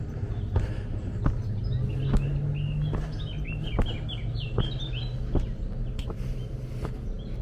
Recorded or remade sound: recorded